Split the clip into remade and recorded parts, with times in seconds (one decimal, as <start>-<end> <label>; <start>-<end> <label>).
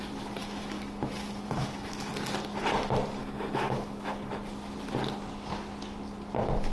0.0-0.4 recorded; 0.4-2.1 remade; 2.1-3.2 recorded; 3.2-4.3 remade; 4.3-6.7 recorded